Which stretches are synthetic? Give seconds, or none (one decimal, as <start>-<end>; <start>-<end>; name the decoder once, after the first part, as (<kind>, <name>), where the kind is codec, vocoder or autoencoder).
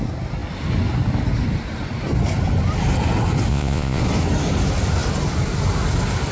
3.5-4.0 (vocoder, Vocos)